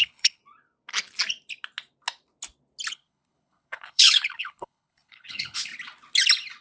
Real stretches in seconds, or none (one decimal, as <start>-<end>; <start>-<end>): 0.4-2.9; 5.7-6.6